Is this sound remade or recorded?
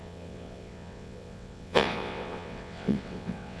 remade